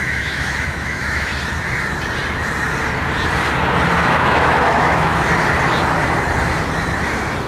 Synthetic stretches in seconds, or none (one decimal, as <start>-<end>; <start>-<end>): 0.0-1.3; 4.0-5.2

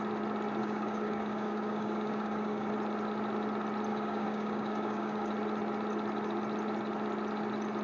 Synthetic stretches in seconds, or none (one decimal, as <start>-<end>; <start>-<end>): 0.6-2.7; 3.9-5.3

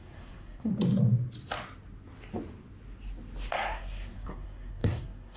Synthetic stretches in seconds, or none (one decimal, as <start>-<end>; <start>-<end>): 0.0-0.7; 3.5-5.4

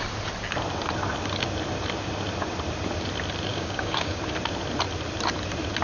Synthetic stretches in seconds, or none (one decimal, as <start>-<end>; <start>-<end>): 3.5-4.2

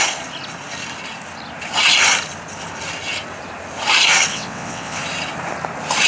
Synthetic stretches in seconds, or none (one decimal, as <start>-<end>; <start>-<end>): 4.3-5.0

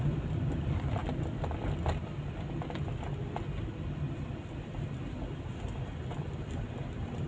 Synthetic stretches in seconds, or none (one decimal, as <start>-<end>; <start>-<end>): none